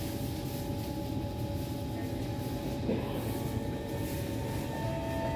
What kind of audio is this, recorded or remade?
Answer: recorded